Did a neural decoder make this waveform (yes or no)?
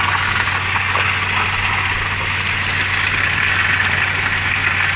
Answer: no